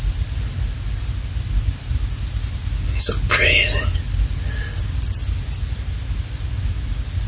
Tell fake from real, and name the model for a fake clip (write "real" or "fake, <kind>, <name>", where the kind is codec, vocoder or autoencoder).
real